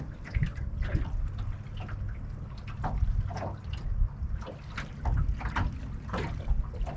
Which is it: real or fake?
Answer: real